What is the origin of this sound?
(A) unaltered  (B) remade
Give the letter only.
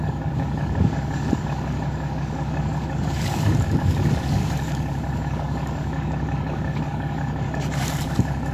B